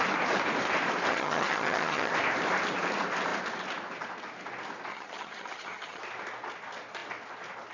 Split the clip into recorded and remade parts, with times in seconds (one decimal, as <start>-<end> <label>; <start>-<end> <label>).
0.0-1.1 recorded; 1.1-2.1 remade; 2.1-4.9 recorded; 4.9-6.0 remade; 6.0-7.7 recorded